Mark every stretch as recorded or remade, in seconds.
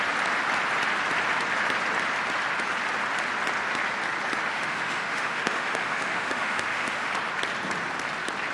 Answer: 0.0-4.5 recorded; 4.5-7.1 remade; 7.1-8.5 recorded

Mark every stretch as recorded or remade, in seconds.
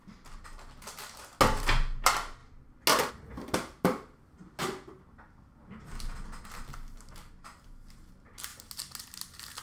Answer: 0.0-9.6 recorded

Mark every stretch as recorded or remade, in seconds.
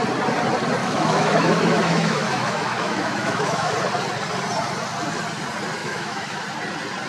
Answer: 0.0-0.8 recorded; 0.8-3.7 remade; 3.7-5.8 recorded; 5.8-6.4 remade; 6.4-7.1 recorded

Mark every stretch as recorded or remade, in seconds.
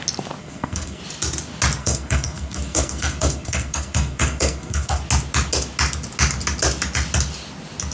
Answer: 0.0-0.4 recorded; 0.4-1.0 remade; 1.0-1.8 recorded; 1.8-5.0 remade; 5.0-7.9 recorded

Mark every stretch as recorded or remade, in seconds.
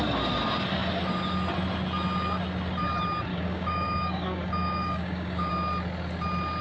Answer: 0.0-3.3 recorded; 3.3-5.5 remade; 5.5-6.6 recorded